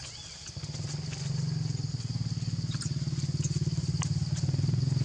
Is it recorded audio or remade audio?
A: recorded